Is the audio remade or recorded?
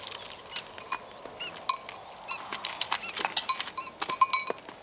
recorded